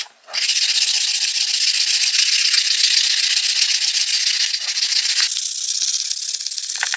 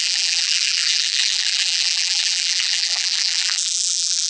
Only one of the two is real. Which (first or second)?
first